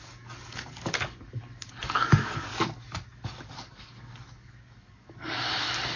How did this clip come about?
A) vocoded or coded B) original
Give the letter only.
A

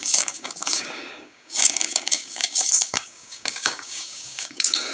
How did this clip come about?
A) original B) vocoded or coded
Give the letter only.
B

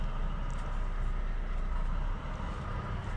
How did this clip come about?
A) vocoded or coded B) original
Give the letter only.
B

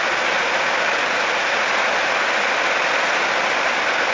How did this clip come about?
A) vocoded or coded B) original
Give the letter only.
B